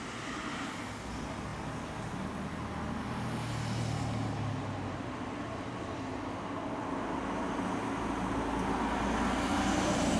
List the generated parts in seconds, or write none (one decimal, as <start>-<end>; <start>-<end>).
none